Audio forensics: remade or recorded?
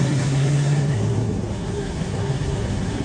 remade